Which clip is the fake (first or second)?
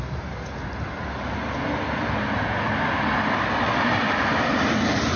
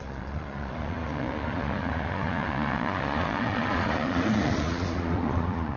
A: second